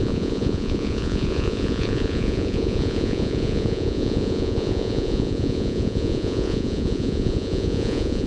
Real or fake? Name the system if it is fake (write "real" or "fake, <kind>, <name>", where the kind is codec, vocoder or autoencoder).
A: fake, vocoder, Vocos